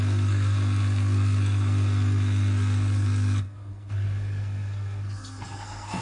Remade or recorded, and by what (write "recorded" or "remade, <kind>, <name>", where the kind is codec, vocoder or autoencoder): remade, codec, SNAC